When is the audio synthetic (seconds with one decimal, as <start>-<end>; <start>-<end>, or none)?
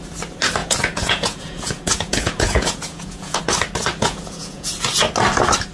0.6-3.4; 4.0-4.7